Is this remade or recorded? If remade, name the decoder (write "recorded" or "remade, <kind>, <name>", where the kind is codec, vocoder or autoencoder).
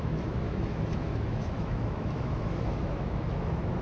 remade, autoencoder, DAC-VAE